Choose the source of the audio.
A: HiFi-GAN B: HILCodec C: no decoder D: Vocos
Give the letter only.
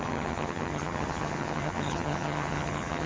A